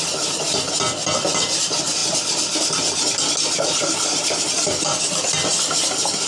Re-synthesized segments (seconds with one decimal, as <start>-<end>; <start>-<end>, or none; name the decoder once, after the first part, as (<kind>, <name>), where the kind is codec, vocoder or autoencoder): none